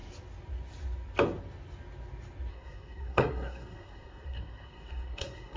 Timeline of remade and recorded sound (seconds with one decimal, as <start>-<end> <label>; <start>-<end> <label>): 0.0-2.5 recorded; 2.5-5.6 remade